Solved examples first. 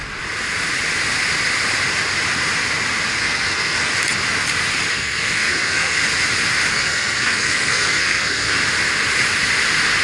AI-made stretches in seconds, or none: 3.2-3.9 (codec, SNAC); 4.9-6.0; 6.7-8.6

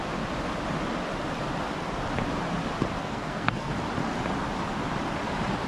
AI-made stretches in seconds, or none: 3.0-3.7 (codec, SNAC)

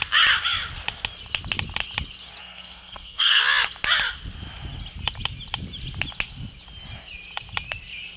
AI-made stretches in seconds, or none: 2.4-3.4 (codec, SNAC)

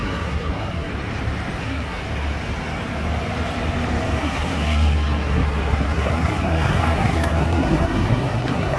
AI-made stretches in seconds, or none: 0.0-0.9 (codec, SNAC); 1.6-2.0; 4.2-8.8